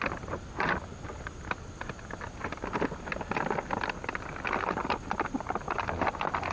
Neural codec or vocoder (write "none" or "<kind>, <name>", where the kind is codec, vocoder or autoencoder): none